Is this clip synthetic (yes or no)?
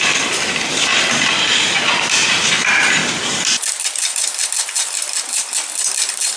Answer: no